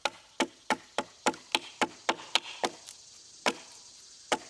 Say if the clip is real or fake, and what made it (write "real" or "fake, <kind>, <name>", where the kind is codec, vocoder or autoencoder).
real